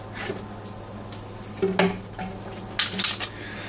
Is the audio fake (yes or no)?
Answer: no